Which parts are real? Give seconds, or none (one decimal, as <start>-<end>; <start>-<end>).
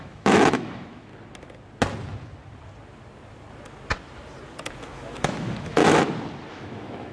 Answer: 1.1-4.8; 5.8-6.5